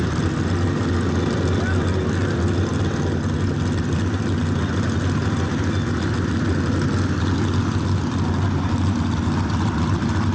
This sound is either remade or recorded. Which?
recorded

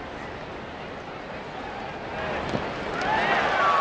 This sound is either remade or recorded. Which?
recorded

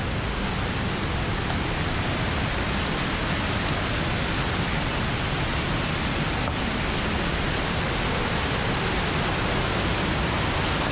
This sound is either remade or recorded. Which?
recorded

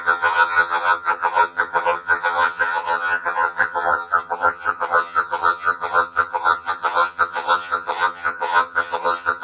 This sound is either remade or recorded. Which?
remade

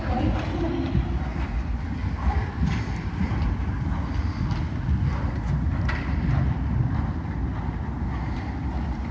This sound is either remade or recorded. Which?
recorded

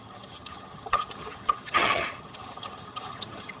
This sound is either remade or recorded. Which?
remade